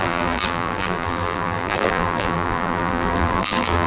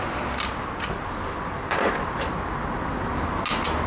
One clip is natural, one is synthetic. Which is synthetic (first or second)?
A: first